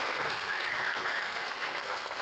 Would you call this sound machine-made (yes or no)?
yes